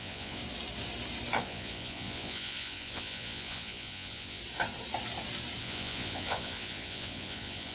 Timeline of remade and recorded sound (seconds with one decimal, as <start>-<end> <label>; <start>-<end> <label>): 0.0-0.4 remade; 0.4-1.4 recorded; 1.4-4.4 remade; 4.4-5.6 recorded; 5.6-7.7 remade